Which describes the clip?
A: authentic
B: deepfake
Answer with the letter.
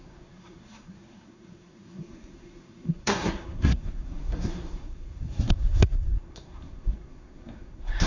B